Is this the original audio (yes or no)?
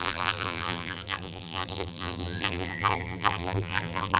no